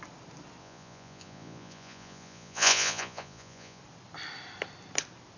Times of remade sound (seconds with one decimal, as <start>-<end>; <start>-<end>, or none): 0.6-3.8